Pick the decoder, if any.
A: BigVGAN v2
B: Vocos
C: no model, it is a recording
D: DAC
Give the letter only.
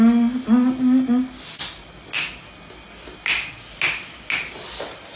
C